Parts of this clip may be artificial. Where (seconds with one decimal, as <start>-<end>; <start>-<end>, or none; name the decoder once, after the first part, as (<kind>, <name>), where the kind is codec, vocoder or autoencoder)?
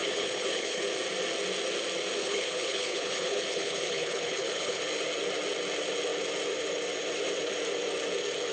0.0-0.8 (codec, HILCodec); 2.2-4.8